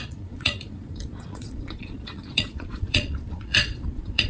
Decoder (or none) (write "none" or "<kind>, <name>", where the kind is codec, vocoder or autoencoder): vocoder, Vocos